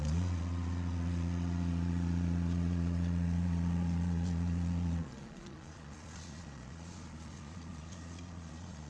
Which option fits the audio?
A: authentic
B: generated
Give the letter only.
B